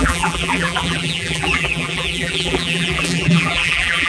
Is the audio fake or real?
fake